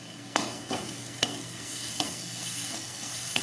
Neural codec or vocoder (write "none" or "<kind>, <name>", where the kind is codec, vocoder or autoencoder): codec, SNAC